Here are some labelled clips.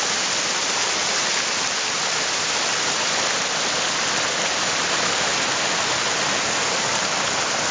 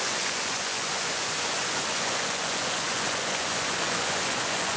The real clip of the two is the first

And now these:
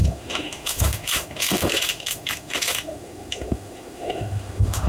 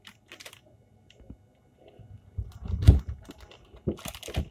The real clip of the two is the second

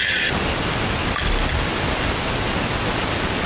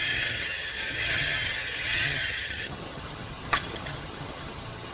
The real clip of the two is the first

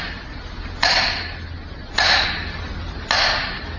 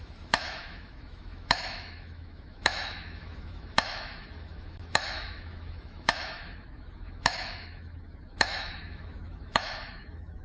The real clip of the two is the first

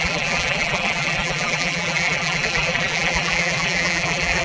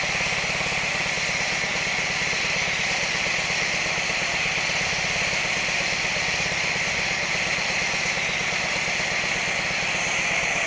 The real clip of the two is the second